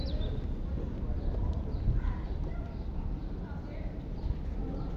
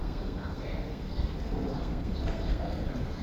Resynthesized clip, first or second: second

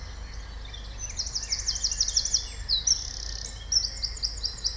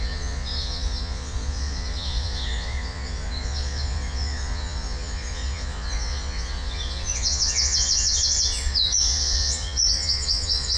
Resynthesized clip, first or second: second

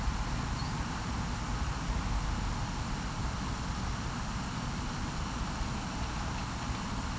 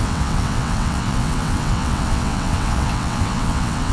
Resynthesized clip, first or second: second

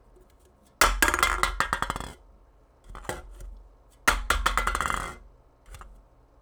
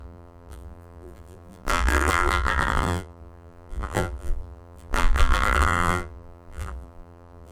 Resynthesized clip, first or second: second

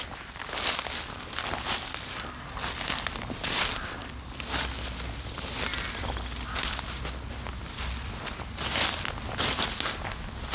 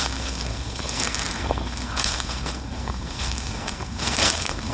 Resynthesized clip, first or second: second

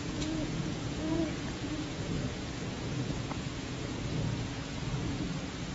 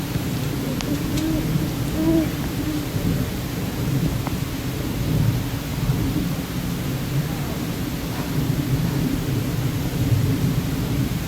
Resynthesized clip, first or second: first